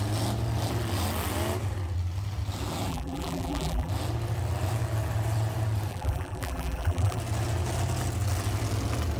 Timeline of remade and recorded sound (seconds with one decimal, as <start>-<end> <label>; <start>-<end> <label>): 0.0-2.9 recorded; 2.9-3.9 remade; 3.9-5.9 recorded; 5.9-7.2 remade; 7.2-9.2 recorded